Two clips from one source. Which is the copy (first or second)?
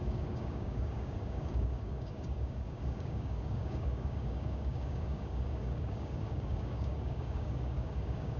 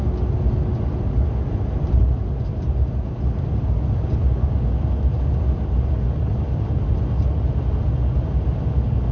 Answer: first